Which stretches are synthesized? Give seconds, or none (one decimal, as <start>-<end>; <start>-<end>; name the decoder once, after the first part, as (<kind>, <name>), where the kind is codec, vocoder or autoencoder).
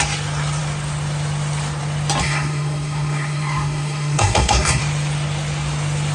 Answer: 2.2-4.8 (codec, SNAC)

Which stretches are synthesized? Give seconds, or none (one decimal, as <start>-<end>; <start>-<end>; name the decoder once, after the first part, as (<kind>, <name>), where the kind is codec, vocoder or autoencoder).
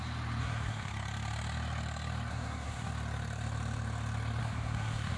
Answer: 0.4-0.9 (codec, SNAC); 2.3-2.9; 4.4-5.2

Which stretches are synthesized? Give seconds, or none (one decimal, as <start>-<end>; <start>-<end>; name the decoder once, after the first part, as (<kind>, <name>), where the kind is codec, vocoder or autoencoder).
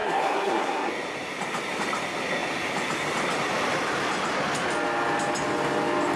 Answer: 0.0-0.9 (codec, SNAC)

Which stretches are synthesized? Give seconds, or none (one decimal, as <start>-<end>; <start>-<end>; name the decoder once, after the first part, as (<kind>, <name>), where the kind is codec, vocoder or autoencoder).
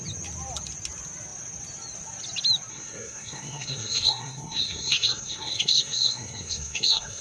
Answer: 2.7-7.2 (codec, SNAC)